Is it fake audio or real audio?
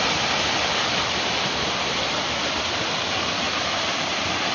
real